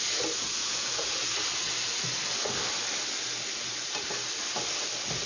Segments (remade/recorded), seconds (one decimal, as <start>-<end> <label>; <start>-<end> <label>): 0.0-0.6 recorded; 0.6-1.3 remade; 1.3-5.3 recorded